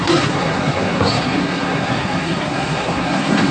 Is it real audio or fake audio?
fake